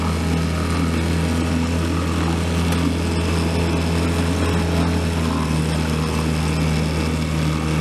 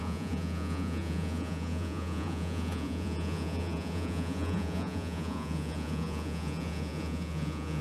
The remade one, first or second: second